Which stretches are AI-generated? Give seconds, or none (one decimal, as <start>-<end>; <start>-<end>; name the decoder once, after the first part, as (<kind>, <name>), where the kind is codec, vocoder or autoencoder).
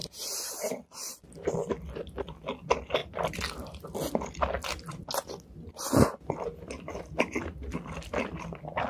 0.0-0.7 (vocoder, BigVGAN v2)